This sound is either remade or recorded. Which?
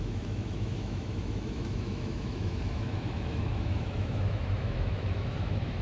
remade